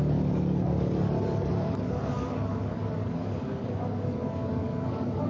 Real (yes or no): no